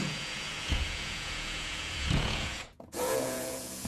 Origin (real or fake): fake